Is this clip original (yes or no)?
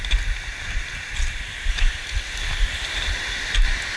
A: yes